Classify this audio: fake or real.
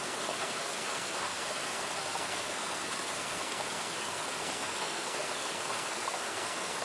fake